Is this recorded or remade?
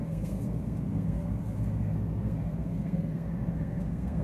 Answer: remade